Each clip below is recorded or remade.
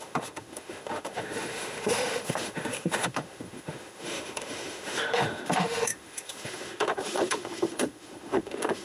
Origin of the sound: remade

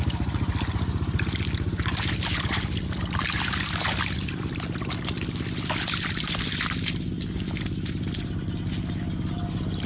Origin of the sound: recorded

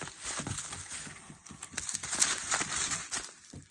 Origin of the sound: recorded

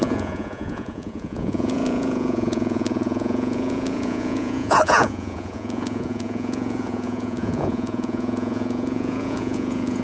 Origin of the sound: remade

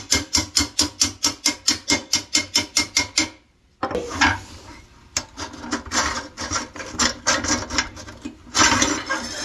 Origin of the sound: recorded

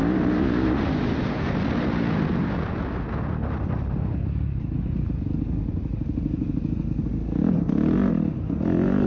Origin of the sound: recorded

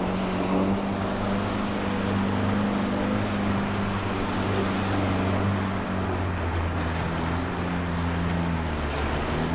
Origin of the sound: recorded